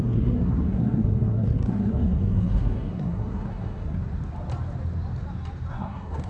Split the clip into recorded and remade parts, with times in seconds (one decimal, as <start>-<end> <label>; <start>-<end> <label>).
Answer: 0.0-4.0 remade; 4.0-5.7 recorded; 5.7-6.3 remade